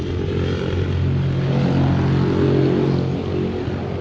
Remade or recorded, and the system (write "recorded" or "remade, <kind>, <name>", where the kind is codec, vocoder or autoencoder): recorded